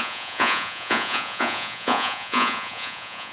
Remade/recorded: remade